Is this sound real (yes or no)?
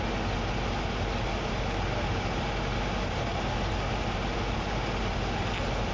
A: yes